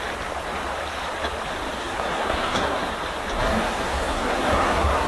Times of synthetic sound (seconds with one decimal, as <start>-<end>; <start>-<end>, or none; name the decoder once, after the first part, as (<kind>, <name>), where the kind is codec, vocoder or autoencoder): 1.8-2.9 (codec, SNAC); 3.4-5.1